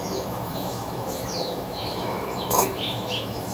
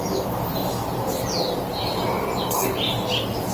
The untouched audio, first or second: second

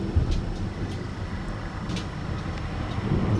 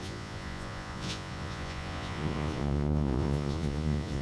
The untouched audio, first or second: first